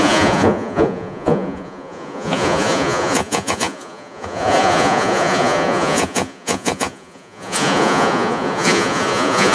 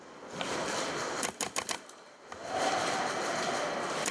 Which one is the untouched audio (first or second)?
second